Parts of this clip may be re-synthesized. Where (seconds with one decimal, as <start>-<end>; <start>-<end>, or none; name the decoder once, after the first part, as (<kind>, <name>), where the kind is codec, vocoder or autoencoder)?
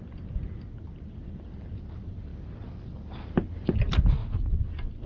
none